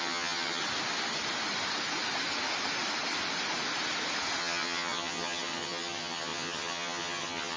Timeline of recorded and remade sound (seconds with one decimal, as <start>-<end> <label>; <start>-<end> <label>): 0.0-0.6 remade; 0.6-4.4 recorded; 4.4-7.6 remade